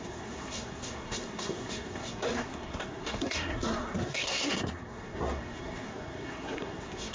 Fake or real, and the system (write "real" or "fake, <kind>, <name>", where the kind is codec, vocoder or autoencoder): fake, codec, SNAC